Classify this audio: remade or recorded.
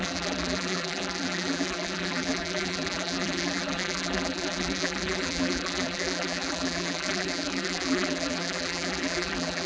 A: remade